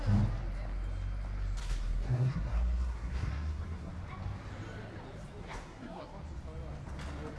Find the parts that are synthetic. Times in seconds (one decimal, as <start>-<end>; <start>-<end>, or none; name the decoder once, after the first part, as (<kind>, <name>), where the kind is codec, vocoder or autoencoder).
1.6-3.9 (codec, SNAC); 5.4-6.0